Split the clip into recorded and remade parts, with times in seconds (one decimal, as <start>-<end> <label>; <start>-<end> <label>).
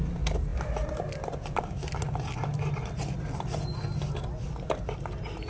0.0-5.5 recorded